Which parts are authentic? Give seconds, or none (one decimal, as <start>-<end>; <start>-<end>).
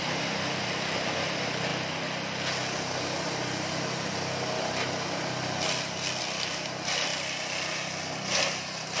1.7-6.2; 7.1-9.0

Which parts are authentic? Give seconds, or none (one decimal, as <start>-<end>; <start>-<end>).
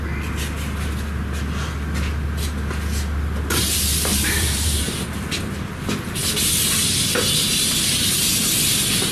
0.0-4.1; 4.9-9.1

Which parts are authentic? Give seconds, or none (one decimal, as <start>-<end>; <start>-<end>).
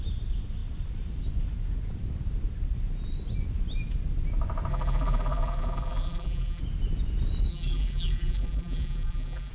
0.0-4.7; 6.6-7.5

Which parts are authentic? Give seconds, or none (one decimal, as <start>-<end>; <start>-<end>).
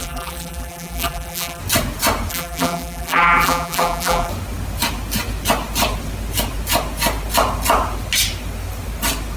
1.6-2.3; 4.3-9.4